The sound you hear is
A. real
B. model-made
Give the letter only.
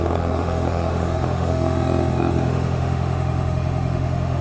B